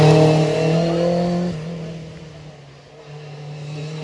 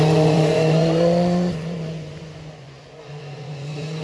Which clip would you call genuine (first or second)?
first